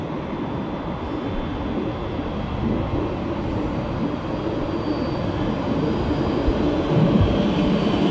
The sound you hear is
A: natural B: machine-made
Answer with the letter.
A